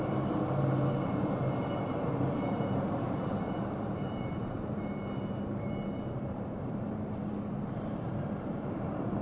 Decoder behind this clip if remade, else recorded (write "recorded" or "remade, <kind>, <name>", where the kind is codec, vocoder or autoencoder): remade, vocoder, BigVGAN v2